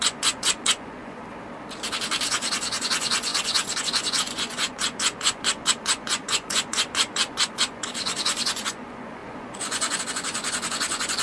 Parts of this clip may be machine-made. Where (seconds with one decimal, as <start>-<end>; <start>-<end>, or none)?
0.0-1.2; 2.3-11.2